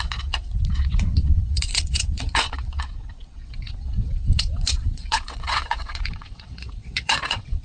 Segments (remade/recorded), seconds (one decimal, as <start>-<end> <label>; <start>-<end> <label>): 0.0-7.6 remade